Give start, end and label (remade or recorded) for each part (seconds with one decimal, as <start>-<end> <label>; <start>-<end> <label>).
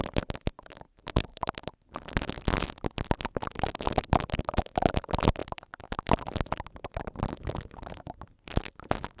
0.0-1.3 recorded; 1.3-4.4 remade; 4.4-5.4 recorded; 5.4-8.5 remade; 8.5-9.2 recorded